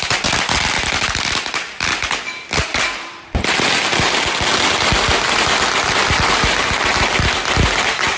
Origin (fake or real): real